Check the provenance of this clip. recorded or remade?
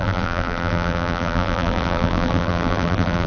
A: remade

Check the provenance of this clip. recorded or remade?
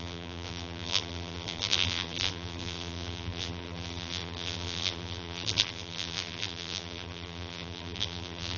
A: remade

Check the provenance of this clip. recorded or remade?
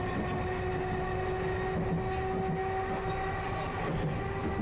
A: recorded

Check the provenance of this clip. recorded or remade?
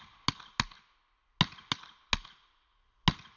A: recorded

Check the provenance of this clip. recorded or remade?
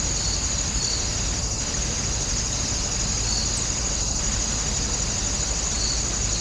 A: recorded